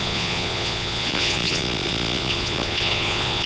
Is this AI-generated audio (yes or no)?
yes